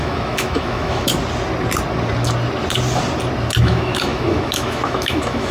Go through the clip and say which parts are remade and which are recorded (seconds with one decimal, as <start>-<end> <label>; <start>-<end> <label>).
0.0-1.1 remade; 1.1-3.6 recorded; 3.6-5.5 remade

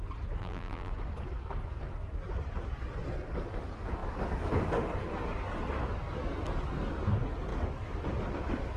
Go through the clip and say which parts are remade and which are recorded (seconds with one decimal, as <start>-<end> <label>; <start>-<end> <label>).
0.0-0.4 recorded; 0.4-0.9 remade; 0.9-8.8 recorded

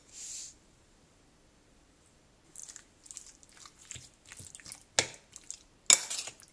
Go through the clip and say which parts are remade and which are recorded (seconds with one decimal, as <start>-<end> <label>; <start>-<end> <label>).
0.0-6.5 recorded

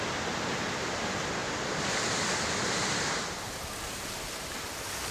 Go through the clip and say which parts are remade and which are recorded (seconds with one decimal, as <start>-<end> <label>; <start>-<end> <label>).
0.0-5.1 recorded

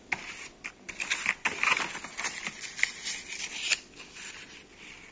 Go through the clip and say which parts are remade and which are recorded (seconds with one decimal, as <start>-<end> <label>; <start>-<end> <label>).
0.0-5.1 recorded

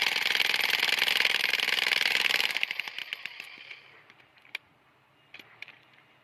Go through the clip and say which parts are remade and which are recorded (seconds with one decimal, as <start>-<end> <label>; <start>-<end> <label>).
0.0-1.1 recorded; 1.1-3.0 remade; 3.0-4.2 recorded; 4.2-6.2 remade